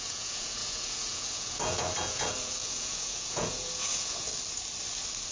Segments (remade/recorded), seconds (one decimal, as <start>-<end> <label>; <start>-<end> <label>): 0.0-4.3 remade; 4.3-5.3 recorded